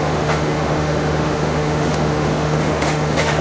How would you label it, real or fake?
fake